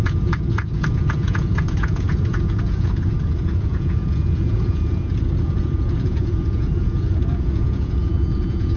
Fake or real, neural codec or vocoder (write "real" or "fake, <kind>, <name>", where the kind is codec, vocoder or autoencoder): fake, vocoder, Vocos